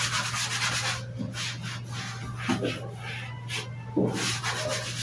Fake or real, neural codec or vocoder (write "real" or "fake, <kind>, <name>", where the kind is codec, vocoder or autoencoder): real